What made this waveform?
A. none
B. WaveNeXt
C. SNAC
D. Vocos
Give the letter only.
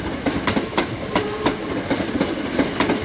A